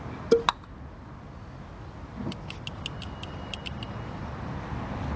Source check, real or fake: real